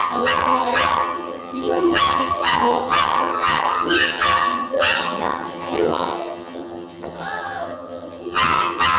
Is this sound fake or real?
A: fake